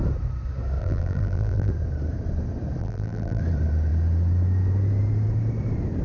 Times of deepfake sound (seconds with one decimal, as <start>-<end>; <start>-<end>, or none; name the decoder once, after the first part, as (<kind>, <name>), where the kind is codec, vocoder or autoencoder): 0.8-1.7 (vocoder, BigVGAN v2); 2.8-3.4